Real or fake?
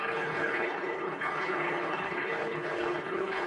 fake